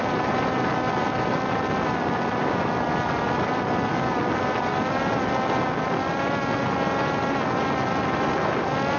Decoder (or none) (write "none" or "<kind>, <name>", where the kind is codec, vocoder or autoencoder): none